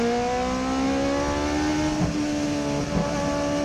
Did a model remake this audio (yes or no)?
no